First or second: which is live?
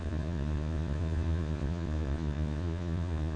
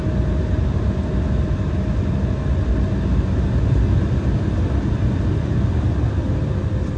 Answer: second